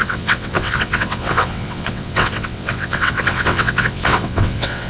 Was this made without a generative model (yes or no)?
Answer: no